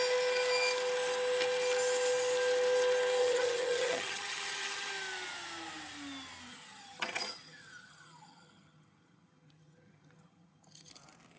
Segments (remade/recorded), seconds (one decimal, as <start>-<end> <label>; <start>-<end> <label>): 0.0-3.2 recorded; 3.2-4.9 remade; 4.9-6.5 recorded; 6.5-10.9 remade; 10.9-11.4 recorded